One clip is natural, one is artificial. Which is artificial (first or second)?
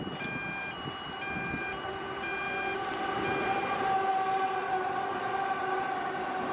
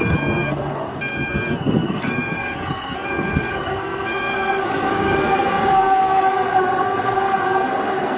second